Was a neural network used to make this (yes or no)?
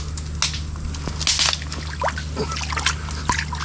no